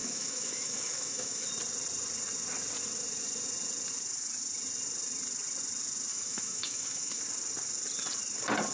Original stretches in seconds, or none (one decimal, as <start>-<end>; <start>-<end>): 1.5-6.1; 7.2-8.7